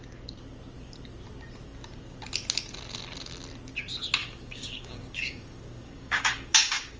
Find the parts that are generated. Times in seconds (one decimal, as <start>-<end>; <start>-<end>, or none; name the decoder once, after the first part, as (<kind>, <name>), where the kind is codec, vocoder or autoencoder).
4.2-7.0 (codec, DAC)